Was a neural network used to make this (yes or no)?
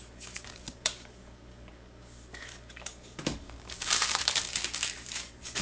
yes